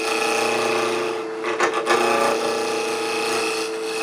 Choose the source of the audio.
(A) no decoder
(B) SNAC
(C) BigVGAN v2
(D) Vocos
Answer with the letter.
A